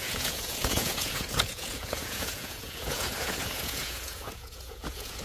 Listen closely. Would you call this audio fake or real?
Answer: fake